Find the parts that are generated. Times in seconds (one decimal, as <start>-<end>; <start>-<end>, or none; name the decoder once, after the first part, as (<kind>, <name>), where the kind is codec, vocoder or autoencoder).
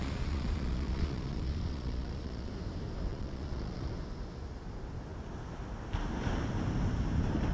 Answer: 0.0-2.5 (vocoder, Vocos); 3.1-3.9